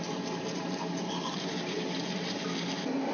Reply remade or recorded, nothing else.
remade